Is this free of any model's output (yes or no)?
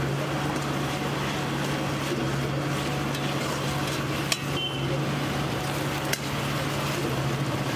yes